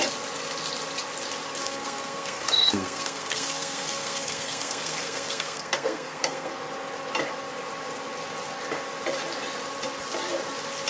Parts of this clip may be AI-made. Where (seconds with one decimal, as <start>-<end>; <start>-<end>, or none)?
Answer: 1.6-6.5